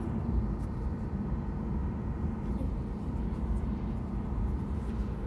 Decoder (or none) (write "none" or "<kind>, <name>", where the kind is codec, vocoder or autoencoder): vocoder, BigVGAN v2